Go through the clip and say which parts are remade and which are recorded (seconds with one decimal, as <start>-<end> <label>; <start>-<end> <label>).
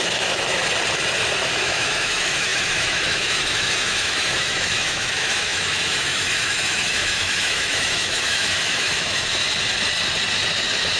0.0-0.6 remade; 0.6-1.5 recorded; 1.5-9.4 remade; 9.4-11.0 recorded